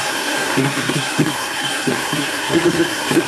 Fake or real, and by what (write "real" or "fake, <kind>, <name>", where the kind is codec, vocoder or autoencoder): fake, codec, SNAC